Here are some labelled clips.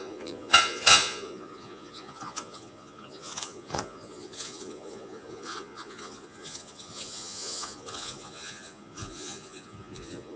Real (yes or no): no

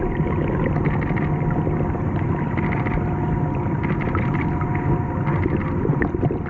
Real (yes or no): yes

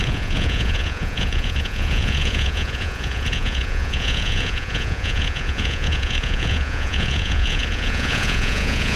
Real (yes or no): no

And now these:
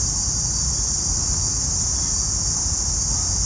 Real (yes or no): yes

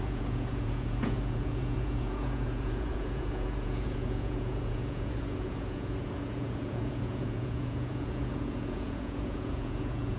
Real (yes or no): no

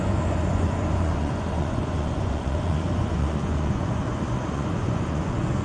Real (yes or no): no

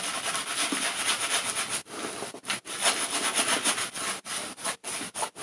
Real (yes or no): yes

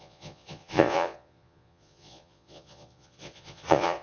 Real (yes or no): no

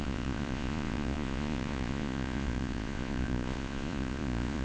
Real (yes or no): no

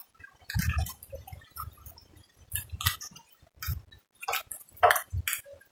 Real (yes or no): yes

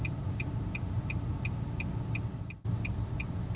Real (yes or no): yes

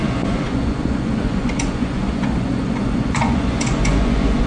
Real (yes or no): no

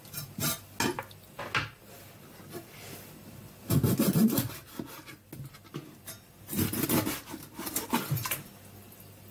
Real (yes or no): yes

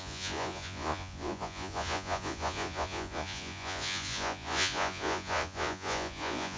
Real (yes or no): no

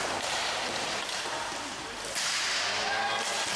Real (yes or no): yes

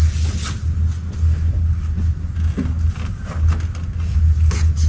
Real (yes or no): yes